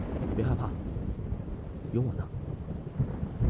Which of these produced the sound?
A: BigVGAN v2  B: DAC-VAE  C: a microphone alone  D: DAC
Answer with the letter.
C